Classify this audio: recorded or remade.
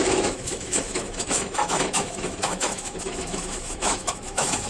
remade